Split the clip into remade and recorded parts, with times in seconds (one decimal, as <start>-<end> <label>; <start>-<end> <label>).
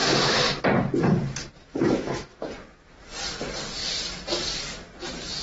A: 0.0-0.6 remade; 0.6-1.6 recorded; 1.6-2.5 remade; 2.5-5.4 recorded